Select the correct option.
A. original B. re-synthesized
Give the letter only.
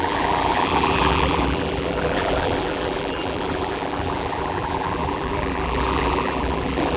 B